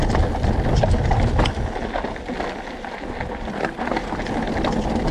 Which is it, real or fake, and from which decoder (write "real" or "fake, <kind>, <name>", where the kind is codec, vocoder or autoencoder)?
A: real